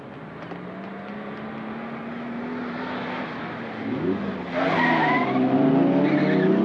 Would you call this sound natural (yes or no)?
yes